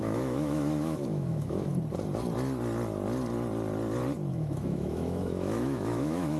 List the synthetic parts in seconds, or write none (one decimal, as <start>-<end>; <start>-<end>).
0.0-1.7; 4.3-6.4